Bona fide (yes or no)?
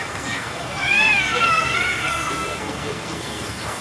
no